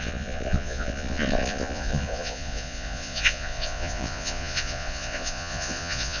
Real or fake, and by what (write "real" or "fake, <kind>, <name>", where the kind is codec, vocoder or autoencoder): fake, vocoder, Vocos